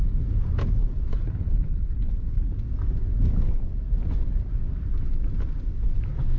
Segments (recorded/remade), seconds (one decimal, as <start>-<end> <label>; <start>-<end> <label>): 0.0-1.1 recorded; 1.1-2.5 remade; 2.5-6.4 recorded

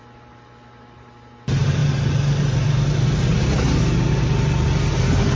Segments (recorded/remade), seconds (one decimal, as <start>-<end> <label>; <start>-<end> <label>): 0.0-5.4 recorded

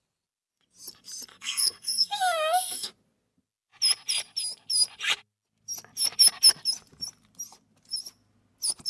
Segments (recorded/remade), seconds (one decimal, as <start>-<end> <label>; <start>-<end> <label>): 0.0-1.3 recorded; 1.3-2.9 remade; 2.9-8.9 recorded

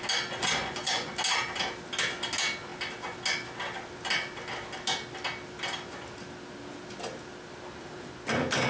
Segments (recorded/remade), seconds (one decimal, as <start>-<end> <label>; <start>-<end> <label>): 0.0-0.4 recorded; 0.4-1.1 remade; 1.1-8.7 recorded

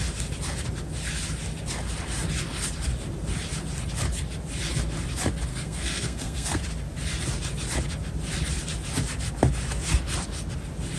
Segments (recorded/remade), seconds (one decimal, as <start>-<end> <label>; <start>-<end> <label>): 0.0-5.5 recorded; 5.5-6.6 remade; 6.6-11.0 recorded

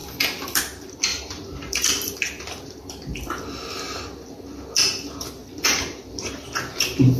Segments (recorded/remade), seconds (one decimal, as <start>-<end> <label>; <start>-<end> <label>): 0.0-1.1 recorded; 1.1-3.3 remade; 3.3-7.2 recorded

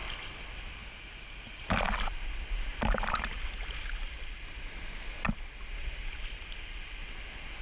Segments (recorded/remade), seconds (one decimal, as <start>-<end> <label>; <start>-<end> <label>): 0.0-7.6 recorded

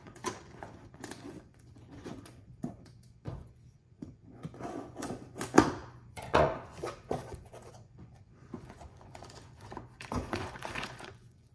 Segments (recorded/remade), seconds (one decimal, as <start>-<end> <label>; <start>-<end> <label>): 0.0-11.5 remade